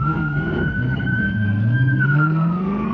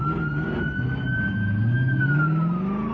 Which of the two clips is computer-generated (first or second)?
first